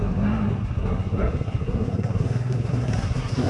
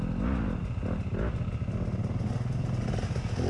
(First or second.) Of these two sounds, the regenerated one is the first